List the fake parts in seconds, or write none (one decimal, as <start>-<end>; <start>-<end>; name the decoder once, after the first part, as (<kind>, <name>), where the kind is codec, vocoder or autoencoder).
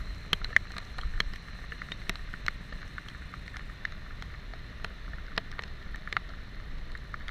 none